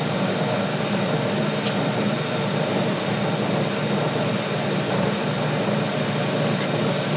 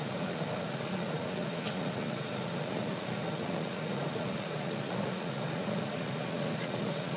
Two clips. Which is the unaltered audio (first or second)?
first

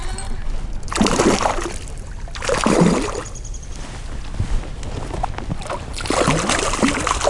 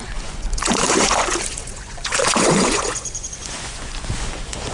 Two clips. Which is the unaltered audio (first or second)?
first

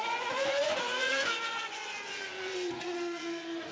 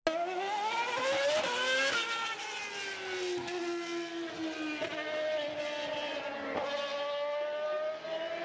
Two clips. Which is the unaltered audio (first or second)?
second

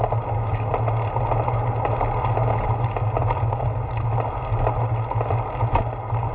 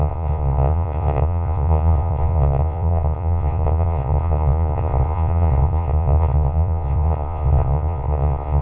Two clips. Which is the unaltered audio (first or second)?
first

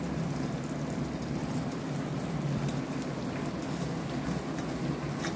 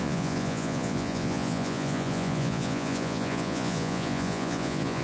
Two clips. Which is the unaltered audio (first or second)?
first